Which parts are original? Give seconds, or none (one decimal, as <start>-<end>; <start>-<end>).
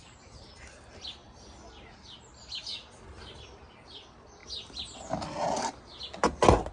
0.0-6.7